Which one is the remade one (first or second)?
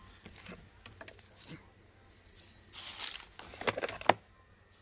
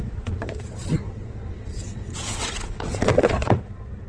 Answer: second